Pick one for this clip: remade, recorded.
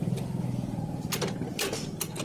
recorded